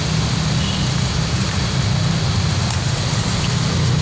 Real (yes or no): yes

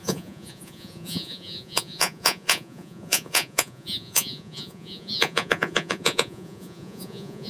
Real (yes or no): no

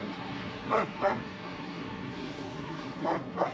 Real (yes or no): no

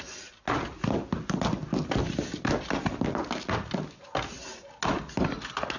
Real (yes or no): yes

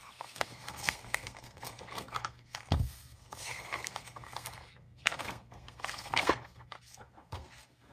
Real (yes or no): no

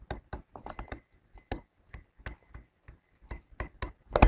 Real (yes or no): yes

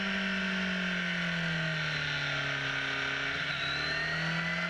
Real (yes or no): yes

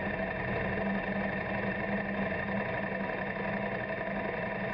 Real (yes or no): yes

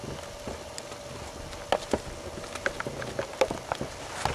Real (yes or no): yes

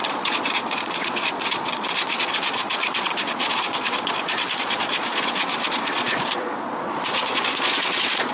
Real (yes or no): no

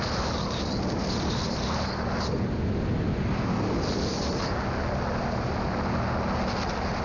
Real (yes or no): yes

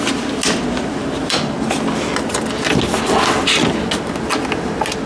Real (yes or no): yes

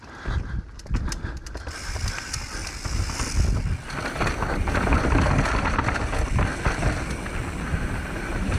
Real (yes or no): yes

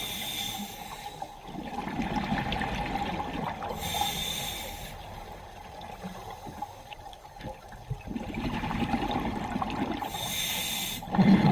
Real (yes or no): yes